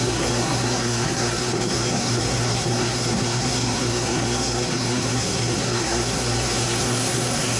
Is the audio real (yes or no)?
no